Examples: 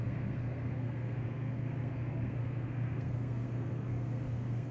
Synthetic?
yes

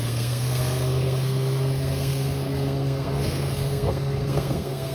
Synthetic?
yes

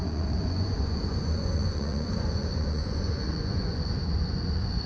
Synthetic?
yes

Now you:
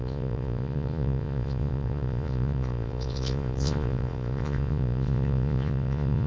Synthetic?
yes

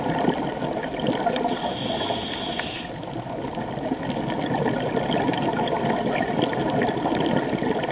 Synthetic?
no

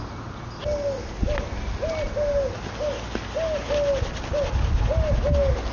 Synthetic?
no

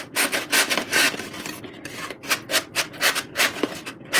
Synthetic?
no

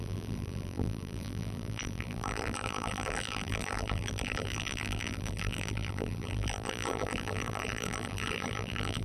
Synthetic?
yes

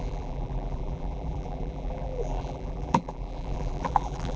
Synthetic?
yes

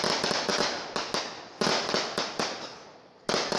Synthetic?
no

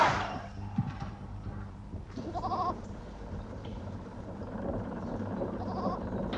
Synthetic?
yes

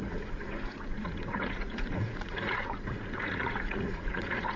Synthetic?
yes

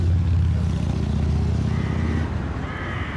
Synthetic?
no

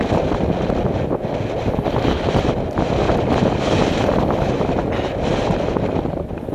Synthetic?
no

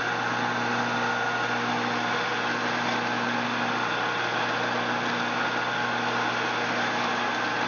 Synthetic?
no